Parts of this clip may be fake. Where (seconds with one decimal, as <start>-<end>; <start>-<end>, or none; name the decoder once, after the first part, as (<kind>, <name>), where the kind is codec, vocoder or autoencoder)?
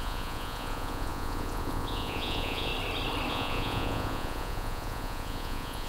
0.0-2.7 (vocoder, Vocos); 3.3-5.9